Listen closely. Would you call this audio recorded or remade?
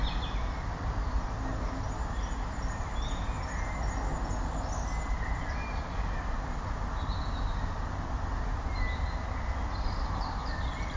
recorded